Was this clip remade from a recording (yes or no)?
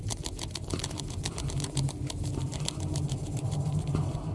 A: no